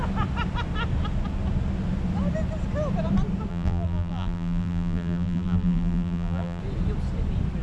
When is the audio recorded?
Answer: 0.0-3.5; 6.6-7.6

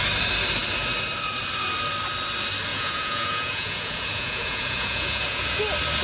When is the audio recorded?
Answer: 0.0-2.7; 5.6-6.0

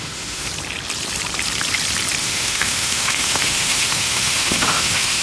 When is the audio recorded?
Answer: 0.5-2.2

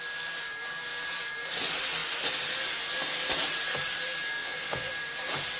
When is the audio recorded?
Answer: 0.0-4.4; 4.9-5.6